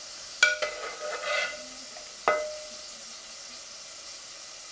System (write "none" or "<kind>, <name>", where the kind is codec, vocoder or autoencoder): none